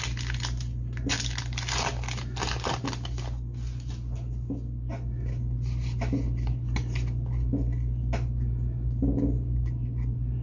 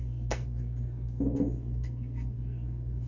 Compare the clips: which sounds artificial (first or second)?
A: second